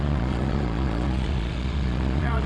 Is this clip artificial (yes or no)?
yes